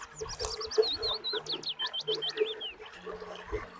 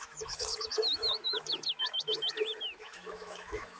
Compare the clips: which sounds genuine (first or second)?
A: first